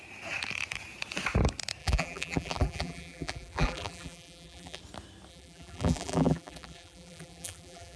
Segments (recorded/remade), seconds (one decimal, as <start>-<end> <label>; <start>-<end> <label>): 0.0-1.8 recorded; 1.8-4.8 remade; 4.8-5.3 recorded; 5.3-8.0 remade